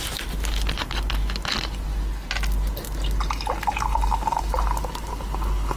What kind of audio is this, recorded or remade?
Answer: recorded